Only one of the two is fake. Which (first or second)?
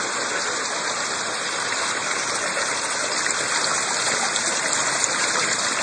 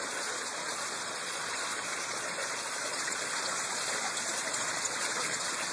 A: second